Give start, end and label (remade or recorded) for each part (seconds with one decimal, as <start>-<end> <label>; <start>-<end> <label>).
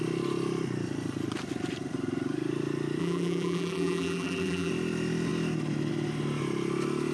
0.0-3.0 recorded; 3.0-4.7 remade; 4.7-7.1 recorded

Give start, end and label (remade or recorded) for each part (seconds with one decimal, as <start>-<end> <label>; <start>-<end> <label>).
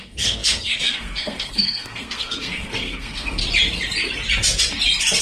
0.0-3.4 remade; 3.4-5.2 recorded